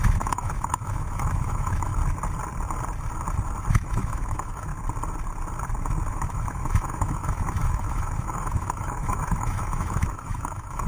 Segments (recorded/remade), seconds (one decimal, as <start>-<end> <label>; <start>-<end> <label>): 0.0-1.9 remade; 1.9-3.7 recorded; 3.7-4.7 remade; 4.7-6.1 recorded; 6.1-10.9 remade